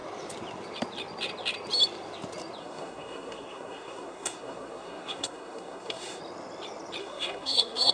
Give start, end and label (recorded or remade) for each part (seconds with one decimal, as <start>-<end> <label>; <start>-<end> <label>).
0.0-2.6 recorded; 2.6-6.2 remade; 6.2-7.0 recorded; 7.0-7.9 remade